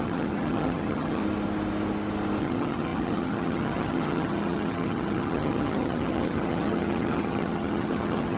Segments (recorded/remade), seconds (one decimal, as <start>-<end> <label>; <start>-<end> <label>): 0.0-1.2 remade; 1.2-2.4 recorded; 2.4-8.4 remade